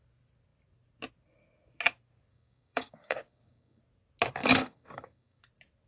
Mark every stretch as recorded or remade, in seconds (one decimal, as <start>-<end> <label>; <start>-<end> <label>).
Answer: 0.0-2.3 recorded; 2.3-3.8 remade; 3.8-4.4 recorded; 4.4-5.4 remade; 5.4-5.9 recorded